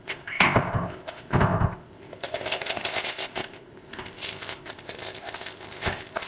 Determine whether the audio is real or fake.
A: fake